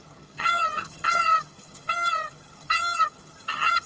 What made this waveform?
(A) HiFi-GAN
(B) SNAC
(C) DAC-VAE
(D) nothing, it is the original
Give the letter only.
A